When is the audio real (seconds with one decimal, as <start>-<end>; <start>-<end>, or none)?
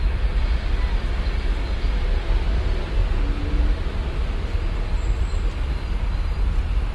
0.0-6.9